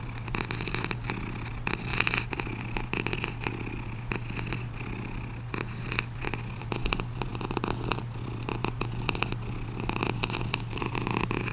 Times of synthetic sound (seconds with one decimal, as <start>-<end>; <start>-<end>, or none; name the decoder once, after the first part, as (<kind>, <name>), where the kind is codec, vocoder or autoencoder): none